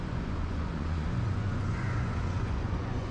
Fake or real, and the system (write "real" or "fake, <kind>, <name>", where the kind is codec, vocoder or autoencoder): fake, vocoder, Vocos